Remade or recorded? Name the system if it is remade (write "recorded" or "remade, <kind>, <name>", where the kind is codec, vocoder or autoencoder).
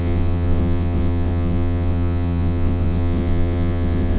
remade, vocoder, WaveNeXt